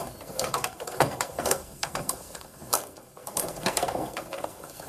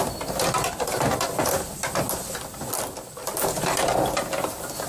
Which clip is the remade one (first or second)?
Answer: first